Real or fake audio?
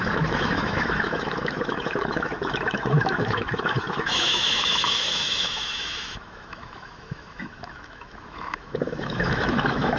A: fake